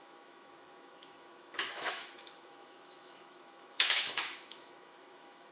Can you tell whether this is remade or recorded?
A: remade